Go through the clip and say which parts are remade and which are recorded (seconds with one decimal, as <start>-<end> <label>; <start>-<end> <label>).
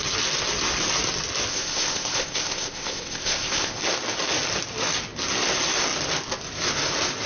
0.0-1.5 recorded; 1.5-3.8 remade; 3.8-7.3 recorded